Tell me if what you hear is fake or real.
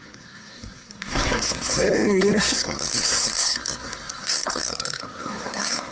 fake